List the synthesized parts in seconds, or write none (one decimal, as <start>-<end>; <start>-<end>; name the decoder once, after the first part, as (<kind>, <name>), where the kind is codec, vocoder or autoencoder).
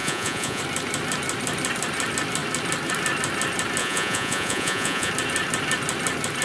0.0-0.6 (vocoder, Vocos); 3.8-5.1